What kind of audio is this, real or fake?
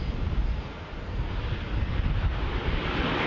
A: real